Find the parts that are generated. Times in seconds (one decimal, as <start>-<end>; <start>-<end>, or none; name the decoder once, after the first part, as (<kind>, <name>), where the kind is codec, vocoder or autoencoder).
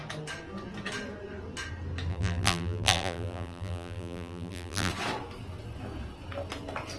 2.1-4.9 (vocoder, BigVGAN v2)